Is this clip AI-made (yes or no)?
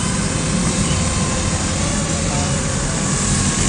no